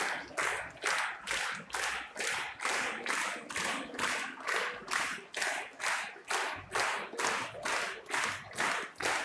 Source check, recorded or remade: recorded